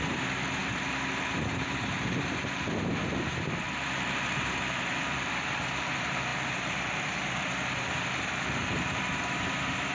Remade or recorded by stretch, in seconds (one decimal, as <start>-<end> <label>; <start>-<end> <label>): 0.0-9.9 remade